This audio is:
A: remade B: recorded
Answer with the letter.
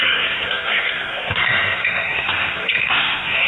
A